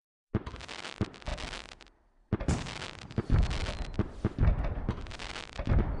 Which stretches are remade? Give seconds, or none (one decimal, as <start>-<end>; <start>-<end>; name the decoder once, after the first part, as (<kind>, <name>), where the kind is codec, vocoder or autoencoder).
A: none